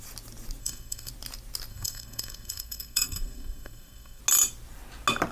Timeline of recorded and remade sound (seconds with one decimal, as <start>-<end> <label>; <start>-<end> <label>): 0.0-0.6 recorded; 0.6-1.1 remade; 1.1-1.7 recorded; 1.7-4.2 remade; 4.2-5.3 recorded